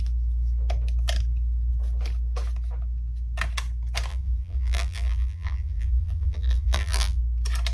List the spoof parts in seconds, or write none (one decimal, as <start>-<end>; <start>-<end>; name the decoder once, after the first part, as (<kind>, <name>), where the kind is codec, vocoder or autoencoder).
4.1-7.2 (vocoder, BigVGAN v2)